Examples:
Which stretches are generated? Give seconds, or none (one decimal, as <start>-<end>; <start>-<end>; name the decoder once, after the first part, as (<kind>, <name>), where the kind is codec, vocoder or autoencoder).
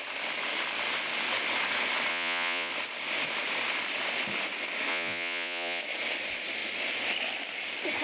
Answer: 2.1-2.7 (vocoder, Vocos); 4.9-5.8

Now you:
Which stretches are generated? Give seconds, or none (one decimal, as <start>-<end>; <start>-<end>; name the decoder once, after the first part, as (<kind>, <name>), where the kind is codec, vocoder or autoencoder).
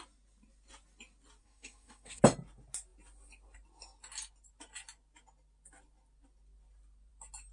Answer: 1.4-2.2 (codec, SNAC)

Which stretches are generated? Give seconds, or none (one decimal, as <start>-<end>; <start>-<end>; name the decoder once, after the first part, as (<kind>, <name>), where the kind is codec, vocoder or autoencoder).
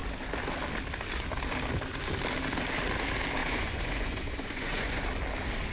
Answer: 3.4-5.0 (vocoder, Vocos)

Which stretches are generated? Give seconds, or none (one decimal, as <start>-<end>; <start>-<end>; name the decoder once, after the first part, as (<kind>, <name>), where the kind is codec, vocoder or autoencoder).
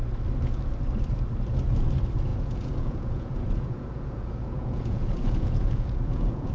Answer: 2.3-6.5 (vocoder, Vocos)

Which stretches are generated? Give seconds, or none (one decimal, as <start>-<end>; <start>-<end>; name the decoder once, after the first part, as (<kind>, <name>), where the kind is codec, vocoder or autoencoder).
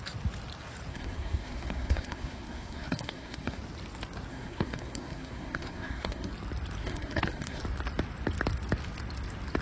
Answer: 0.9-3.6 (codec, SNAC); 4.3-6.3; 6.8-7.6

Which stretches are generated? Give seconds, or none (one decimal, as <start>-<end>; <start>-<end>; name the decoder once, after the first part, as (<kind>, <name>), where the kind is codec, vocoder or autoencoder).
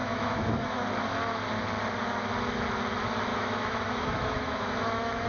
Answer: 0.0-0.8 (autoencoder, DAC-VAE); 3.3-5.3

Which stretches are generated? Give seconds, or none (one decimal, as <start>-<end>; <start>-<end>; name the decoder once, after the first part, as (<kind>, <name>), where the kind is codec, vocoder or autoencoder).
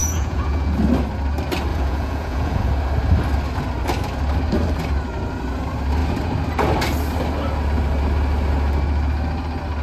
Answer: 0.0-0.7 (vocoder, Vocos); 1.7-2.7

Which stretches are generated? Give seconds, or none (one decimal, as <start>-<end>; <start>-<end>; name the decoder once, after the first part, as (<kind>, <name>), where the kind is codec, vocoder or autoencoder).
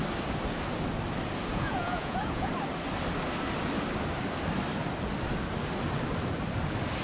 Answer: 1.5-2.5 (vocoder, Vocos)